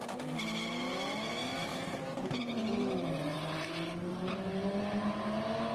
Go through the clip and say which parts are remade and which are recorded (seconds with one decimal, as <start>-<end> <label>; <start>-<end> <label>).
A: 0.0-1.7 recorded; 1.7-2.4 remade; 2.4-3.3 recorded; 3.3-4.8 remade; 4.8-5.7 recorded